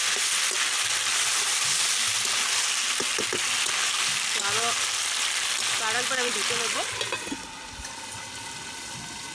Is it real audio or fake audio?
real